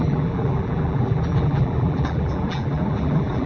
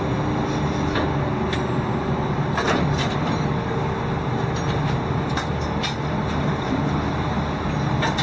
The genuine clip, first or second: second